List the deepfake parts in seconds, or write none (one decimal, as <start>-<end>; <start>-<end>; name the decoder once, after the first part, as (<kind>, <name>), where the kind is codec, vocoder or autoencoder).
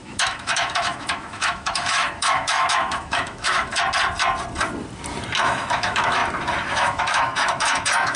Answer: 0.0-3.7 (autoencoder, DAC-VAE); 5.4-6.2; 6.7-8.2